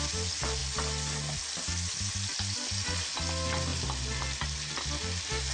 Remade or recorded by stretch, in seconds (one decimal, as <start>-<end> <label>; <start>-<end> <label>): 0.0-5.5 recorded